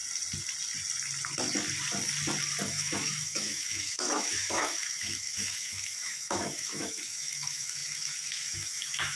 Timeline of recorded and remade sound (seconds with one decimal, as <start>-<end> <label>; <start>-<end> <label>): 0.0-2.7 recorded; 2.7-9.2 remade